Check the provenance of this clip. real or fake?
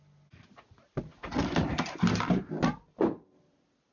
real